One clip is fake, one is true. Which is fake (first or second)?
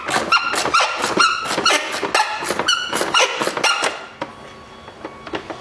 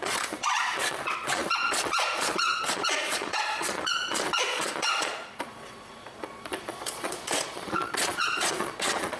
second